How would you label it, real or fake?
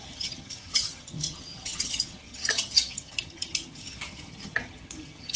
fake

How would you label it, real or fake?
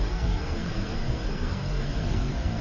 fake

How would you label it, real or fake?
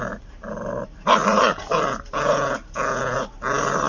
real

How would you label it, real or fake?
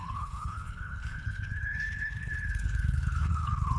fake